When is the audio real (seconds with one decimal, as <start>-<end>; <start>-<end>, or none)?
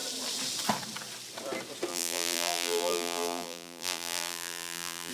0.0-1.9